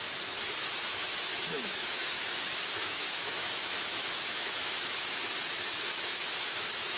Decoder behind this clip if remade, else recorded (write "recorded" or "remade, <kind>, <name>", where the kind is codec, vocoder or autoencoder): remade, autoencoder, DAC-VAE